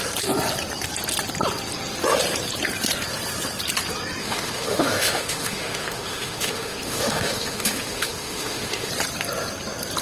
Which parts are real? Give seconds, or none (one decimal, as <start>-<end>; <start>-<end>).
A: 0.0-4.2; 8.9-10.0